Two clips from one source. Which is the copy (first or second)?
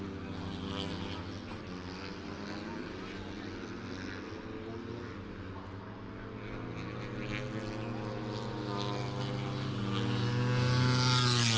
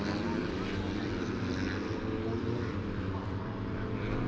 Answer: second